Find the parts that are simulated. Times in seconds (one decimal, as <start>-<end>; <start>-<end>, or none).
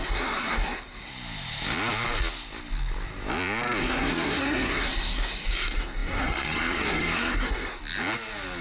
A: 0.0-1.1; 3.8-7.8